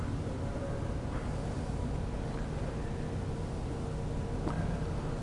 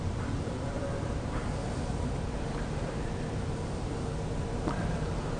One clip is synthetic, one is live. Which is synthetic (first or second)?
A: second